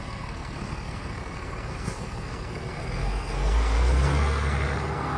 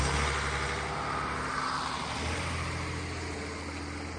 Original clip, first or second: second